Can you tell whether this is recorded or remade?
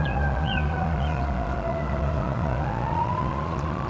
remade